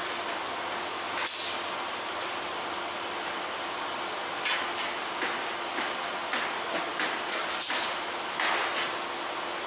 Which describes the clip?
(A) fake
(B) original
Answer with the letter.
B